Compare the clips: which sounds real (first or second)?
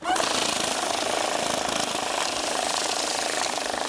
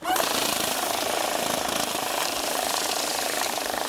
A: first